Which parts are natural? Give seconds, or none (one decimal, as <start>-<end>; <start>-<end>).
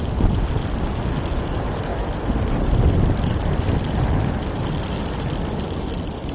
0.0-6.3